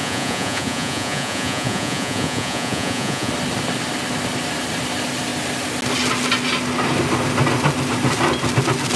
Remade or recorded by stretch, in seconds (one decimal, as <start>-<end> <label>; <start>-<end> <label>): 0.0-3.3 remade; 3.3-9.0 recorded